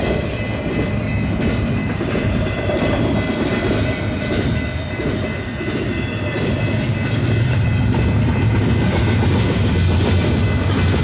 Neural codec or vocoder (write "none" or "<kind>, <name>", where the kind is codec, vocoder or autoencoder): none